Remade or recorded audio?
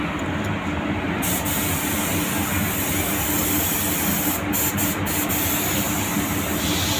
recorded